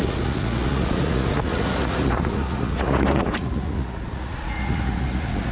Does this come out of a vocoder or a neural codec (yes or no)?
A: yes